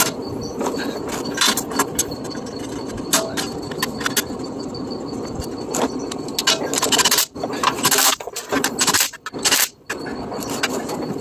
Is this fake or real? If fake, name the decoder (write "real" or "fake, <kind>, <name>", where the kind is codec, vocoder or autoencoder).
real